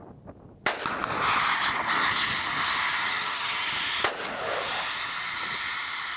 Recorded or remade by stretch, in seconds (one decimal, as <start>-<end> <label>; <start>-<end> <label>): 0.0-3.0 recorded; 3.0-3.7 remade; 3.7-6.2 recorded